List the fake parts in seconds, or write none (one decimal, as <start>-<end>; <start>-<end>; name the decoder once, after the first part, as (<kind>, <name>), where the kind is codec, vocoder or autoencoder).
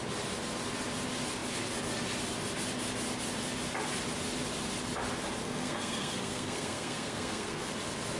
5.4-7.7 (codec, SNAC)